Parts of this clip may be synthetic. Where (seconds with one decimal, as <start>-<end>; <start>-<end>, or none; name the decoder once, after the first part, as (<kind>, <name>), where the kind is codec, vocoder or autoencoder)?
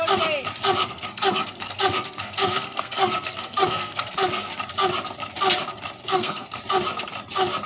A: 0.8-4.5 (codec, SNAC); 6.0-6.6